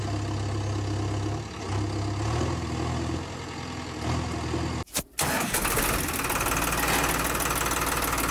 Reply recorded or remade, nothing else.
recorded